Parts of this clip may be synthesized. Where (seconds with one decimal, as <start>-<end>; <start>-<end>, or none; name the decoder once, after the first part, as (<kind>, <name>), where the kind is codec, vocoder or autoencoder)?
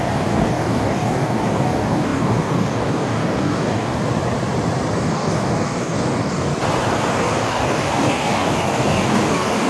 0.0-4.0 (codec, DAC); 5.0-6.5; 7.1-9.7